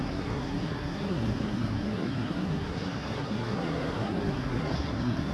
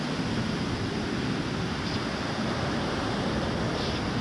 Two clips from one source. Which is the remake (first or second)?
first